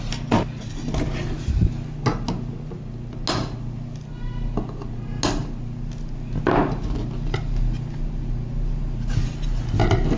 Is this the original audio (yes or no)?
yes